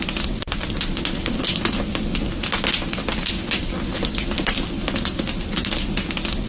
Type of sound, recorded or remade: recorded